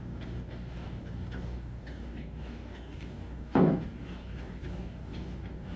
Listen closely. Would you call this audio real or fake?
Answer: fake